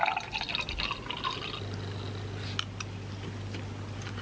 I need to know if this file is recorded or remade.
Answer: recorded